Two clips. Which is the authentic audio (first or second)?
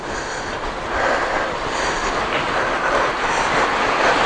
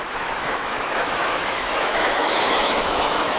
first